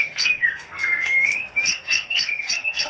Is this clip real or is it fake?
fake